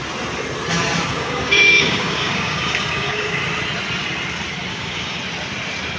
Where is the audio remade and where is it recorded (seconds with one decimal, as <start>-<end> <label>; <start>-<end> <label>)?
0.0-1.1 recorded; 1.1-3.4 remade; 3.4-4.7 recorded; 4.7-5.2 remade; 5.2-6.0 recorded